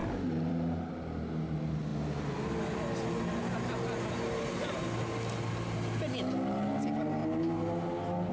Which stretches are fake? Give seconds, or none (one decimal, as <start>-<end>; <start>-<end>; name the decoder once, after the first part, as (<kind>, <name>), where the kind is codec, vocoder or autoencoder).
none